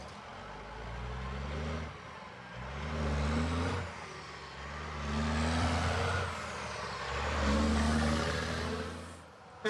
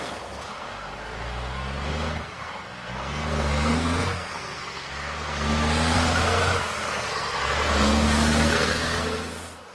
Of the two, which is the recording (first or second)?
first